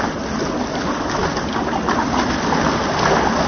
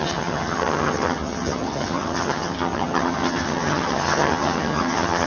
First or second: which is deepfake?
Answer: second